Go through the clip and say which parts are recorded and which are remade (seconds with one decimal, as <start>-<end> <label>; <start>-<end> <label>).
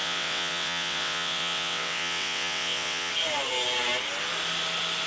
0.0-3.1 remade; 3.1-5.1 recorded